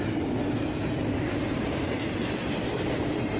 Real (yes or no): yes